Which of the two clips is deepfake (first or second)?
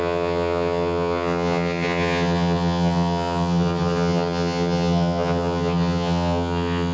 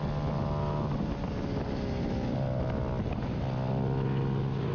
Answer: first